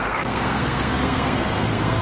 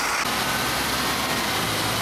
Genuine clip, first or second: second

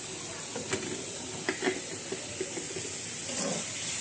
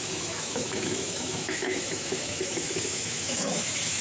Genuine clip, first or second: first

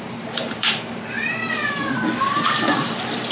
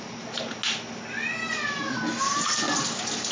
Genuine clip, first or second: second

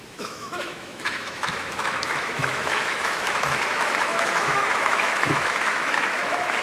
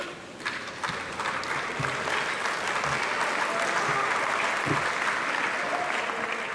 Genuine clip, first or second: second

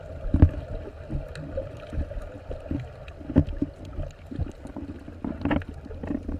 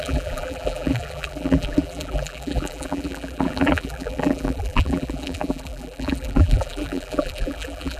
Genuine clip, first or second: first